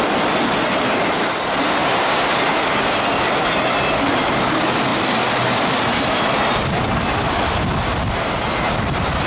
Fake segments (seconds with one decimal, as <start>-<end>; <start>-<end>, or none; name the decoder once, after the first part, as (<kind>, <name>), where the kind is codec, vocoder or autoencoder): none